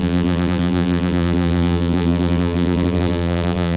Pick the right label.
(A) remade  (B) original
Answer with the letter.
A